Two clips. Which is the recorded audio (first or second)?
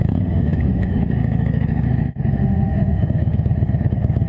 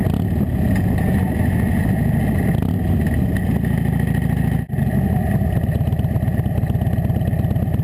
second